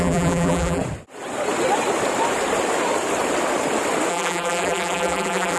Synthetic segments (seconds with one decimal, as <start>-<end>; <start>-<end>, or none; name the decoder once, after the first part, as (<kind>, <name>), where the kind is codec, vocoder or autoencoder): 0.0-0.8 (vocoder, BigVGAN v2); 4.1-5.6